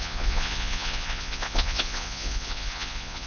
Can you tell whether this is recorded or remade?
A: remade